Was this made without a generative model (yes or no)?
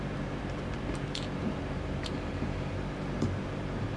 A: no